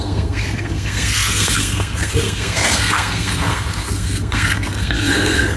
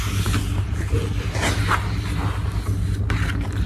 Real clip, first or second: second